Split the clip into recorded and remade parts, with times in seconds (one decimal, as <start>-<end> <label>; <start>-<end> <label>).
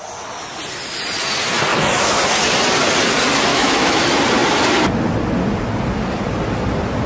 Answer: 0.0-1.7 recorded; 1.7-2.2 remade; 2.2-3.5 recorded; 3.5-4.0 remade; 4.0-7.1 recorded